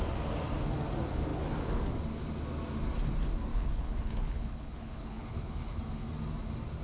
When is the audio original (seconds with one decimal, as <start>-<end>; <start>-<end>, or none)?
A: 0.0-3.5; 5.8-6.8